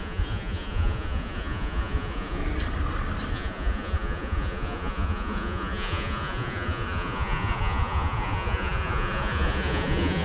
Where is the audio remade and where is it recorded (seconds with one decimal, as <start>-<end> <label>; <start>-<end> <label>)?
0.0-2.4 remade; 2.4-3.3 recorded; 3.3-10.2 remade